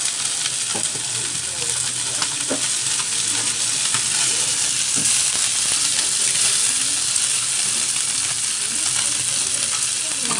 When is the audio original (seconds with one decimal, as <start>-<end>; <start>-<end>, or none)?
0.0-10.4